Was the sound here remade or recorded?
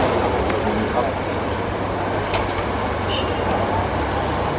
recorded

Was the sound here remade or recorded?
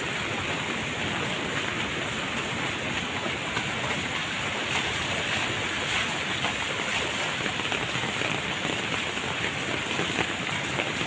recorded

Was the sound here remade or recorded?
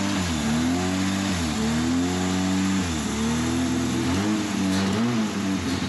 recorded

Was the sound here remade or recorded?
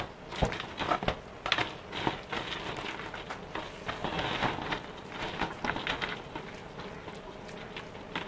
recorded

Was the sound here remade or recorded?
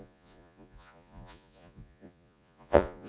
remade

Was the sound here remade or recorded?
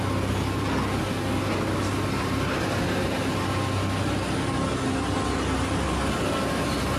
recorded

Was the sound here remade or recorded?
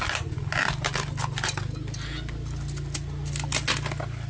recorded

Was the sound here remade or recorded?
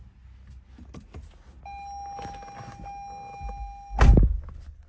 recorded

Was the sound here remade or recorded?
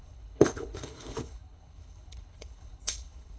remade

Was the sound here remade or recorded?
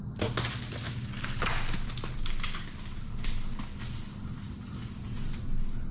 recorded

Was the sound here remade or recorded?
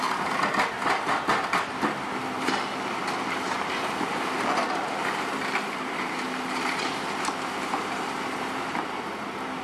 recorded